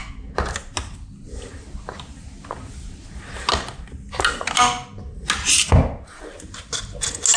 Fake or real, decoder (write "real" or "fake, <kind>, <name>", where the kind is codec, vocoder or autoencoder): real